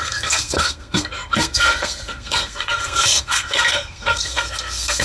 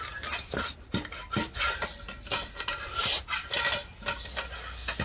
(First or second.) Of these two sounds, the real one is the second